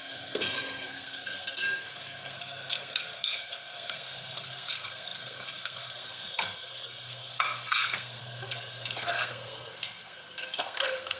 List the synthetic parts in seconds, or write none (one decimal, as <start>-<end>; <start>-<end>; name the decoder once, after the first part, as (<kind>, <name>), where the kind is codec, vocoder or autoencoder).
0.0-11.2 (codec, SNAC)